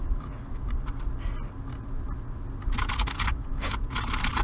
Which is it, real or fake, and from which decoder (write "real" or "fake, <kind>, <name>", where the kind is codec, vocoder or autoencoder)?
fake, vocoder, BigVGAN v2